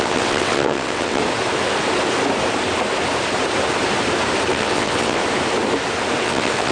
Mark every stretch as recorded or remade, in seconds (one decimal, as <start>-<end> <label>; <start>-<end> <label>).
0.0-1.2 remade; 1.2-4.5 recorded; 4.5-5.2 remade; 5.2-6.2 recorded; 6.2-6.7 remade